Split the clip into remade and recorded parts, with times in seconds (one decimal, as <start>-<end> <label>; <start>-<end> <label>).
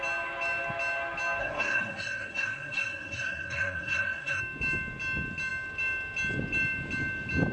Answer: 0.0-1.4 recorded; 1.4-4.4 remade; 4.4-7.5 recorded